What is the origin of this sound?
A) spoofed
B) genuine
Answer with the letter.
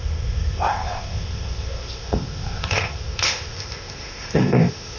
A